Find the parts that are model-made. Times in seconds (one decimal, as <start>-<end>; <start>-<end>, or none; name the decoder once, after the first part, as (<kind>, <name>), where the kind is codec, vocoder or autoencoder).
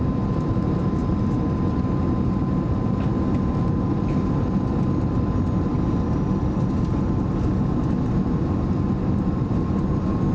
none